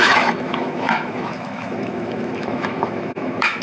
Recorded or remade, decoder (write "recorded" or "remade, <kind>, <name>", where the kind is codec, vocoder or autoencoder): remade, autoencoder, DAC-VAE